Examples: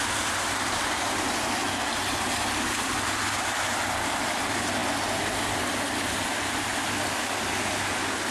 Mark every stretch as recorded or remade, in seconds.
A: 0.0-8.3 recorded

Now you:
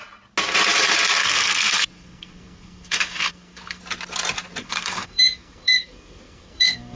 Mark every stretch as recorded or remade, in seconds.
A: 0.0-1.2 recorded; 1.2-3.8 remade; 3.8-4.6 recorded; 4.6-7.0 remade

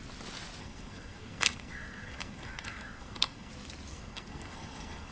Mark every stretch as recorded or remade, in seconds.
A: 0.0-0.6 recorded; 0.6-3.5 remade; 3.5-3.9 recorded; 3.9-5.1 remade

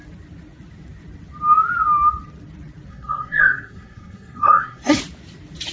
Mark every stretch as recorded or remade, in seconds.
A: 0.0-2.9 recorded; 2.9-5.0 remade; 5.0-5.7 recorded

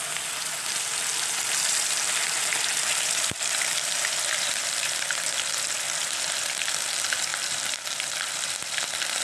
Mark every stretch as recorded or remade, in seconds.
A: 0.0-9.2 recorded